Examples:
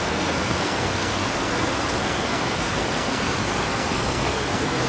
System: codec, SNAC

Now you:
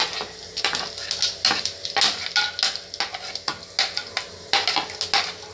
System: none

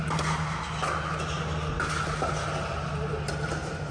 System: none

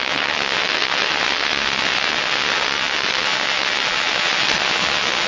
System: vocoder, WaveNeXt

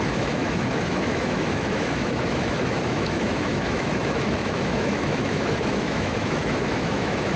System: autoencoder, DAC-VAE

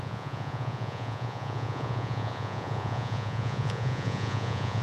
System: vocoder, Vocos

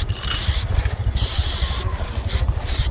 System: none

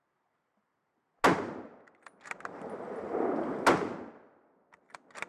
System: none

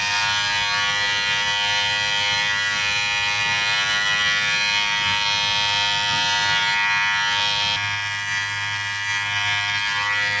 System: none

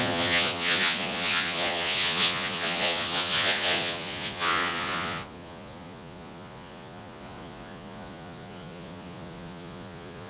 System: vocoder, Vocos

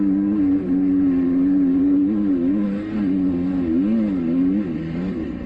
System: none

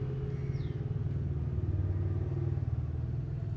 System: none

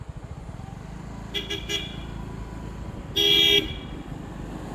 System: none